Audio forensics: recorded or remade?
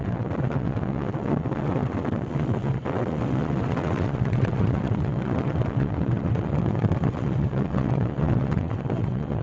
remade